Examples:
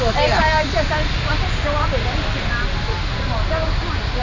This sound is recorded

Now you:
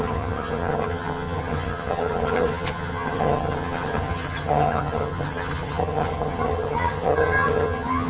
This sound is remade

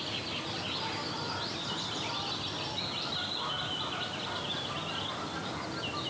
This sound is recorded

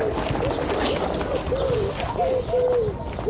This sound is recorded